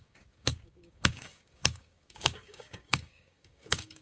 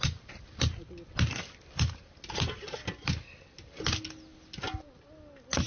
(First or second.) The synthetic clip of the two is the first